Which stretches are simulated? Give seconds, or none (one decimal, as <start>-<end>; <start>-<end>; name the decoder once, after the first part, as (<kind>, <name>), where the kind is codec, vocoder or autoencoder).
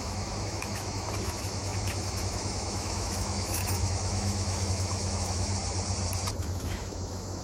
0.0-5.5 (autoencoder, DAC-VAE); 6.4-7.4